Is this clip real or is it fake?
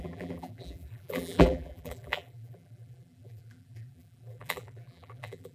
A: fake